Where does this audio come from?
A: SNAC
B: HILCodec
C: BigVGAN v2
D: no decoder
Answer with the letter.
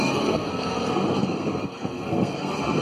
A